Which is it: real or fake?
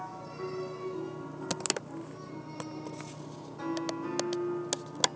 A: real